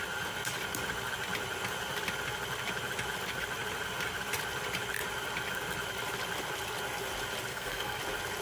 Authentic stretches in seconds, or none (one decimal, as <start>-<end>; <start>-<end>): 0.0-7.5; 8.0-8.4